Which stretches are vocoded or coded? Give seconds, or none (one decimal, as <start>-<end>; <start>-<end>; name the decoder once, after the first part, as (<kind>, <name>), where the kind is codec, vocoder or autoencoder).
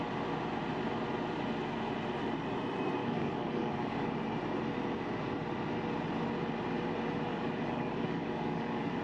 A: 3.0-4.1 (codec, DAC); 7.3-9.0